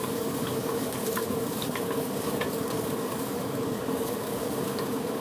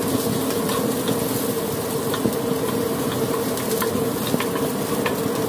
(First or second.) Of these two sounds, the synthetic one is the first